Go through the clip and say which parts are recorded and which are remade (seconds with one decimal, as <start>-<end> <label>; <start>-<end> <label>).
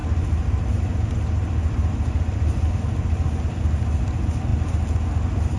0.0-3.4 remade; 3.4-5.6 recorded